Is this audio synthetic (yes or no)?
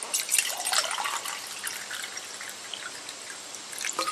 no